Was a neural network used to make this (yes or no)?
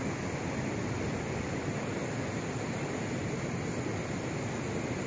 no